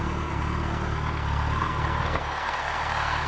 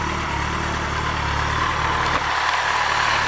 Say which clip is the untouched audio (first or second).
second